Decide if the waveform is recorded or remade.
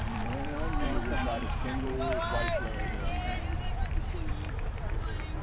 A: remade